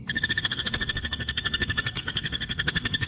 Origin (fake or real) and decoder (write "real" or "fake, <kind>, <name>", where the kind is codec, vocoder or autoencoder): fake, codec, SNAC